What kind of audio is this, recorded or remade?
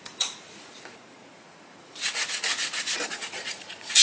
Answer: remade